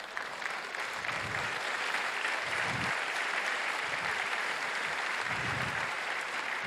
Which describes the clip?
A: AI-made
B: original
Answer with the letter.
A